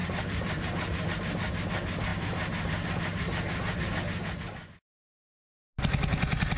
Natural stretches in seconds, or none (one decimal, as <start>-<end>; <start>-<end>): 1.1-6.6